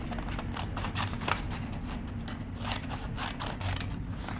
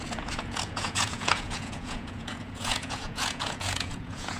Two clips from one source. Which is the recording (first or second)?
first